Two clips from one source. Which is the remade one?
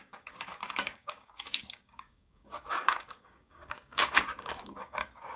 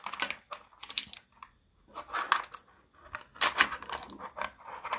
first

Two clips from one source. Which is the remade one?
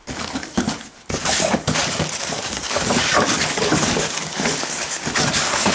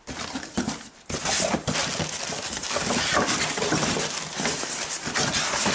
first